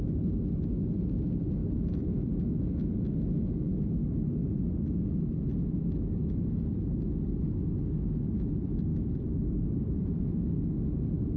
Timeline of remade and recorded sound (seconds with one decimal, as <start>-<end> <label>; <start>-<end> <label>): 0.0-1.6 recorded; 1.6-2.4 remade; 2.4-8.9 recorded; 8.9-10.2 remade; 10.2-11.4 recorded